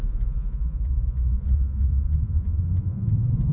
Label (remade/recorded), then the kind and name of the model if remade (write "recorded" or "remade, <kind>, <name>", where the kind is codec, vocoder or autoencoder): remade, vocoder, Vocos